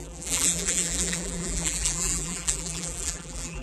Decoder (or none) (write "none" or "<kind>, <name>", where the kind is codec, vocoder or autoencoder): vocoder, BigVGAN v2